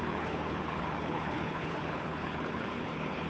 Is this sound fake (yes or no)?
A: yes